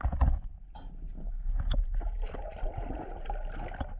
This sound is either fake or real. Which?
real